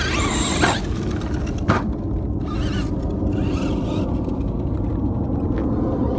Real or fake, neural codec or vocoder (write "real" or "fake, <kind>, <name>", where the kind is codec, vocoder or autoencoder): real